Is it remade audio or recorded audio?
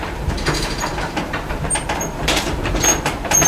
remade